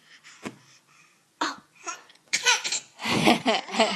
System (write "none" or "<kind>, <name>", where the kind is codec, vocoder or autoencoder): vocoder, Vocos